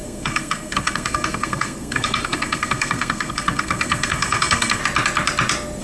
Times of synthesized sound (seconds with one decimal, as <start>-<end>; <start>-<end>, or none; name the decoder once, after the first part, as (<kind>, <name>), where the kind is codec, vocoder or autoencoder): 0.0-4.8 (codec, SNAC)